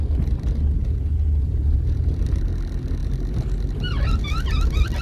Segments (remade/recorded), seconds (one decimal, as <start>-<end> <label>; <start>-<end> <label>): 0.0-0.8 recorded; 0.8-2.0 remade; 2.0-5.0 recorded